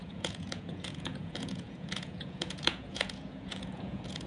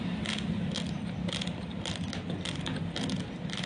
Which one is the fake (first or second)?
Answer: first